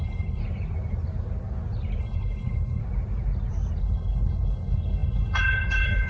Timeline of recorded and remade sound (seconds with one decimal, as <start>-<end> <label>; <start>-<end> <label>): 0.0-0.4 remade; 0.4-2.0 recorded; 2.0-2.8 remade; 2.8-3.8 recorded; 3.8-6.1 remade